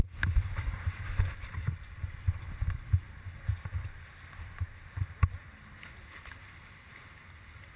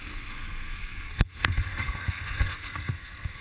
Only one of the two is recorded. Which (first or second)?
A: first